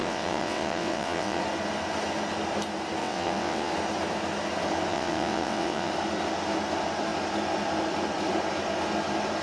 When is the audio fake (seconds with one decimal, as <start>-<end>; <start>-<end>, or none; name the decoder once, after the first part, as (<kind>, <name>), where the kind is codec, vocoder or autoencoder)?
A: 0.0-1.4 (vocoder, WaveNeXt); 3.0-3.7; 4.9-5.9